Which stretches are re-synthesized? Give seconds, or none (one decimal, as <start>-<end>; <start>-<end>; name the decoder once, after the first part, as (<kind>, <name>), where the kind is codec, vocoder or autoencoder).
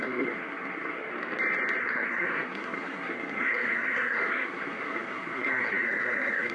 0.0-1.1 (codec, SNAC); 1.8-6.5